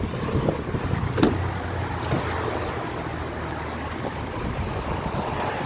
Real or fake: real